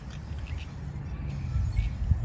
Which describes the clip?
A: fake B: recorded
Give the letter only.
B